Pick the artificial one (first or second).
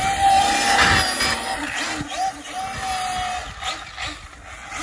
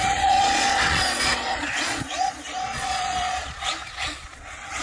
second